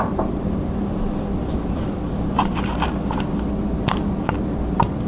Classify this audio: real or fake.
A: fake